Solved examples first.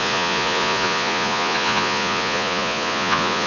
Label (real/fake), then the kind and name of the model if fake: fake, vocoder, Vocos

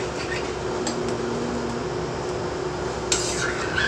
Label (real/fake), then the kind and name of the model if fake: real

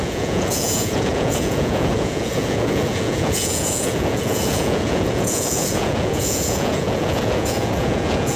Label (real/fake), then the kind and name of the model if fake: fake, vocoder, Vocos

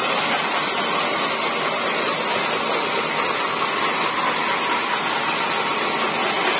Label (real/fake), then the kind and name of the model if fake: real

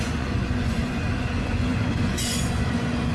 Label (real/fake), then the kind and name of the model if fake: fake, vocoder, Vocos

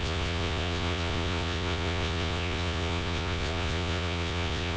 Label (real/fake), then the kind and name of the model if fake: fake, vocoder, Vocos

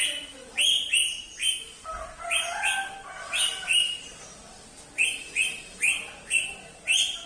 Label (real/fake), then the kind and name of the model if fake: real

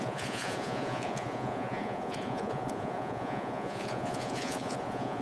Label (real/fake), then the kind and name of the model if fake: fake, vocoder, Vocos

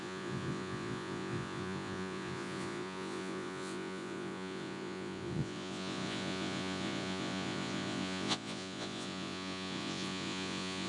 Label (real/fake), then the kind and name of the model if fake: fake, vocoder, Vocos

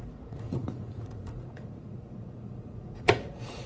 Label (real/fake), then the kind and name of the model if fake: fake, vocoder, Vocos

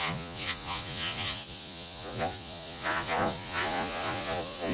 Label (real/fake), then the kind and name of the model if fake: fake, vocoder, Vocos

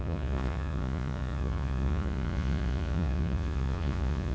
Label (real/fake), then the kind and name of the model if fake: fake, vocoder, Vocos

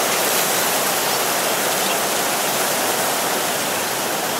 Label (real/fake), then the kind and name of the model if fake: real